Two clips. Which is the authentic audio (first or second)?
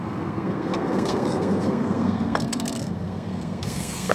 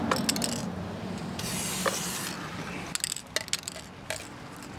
second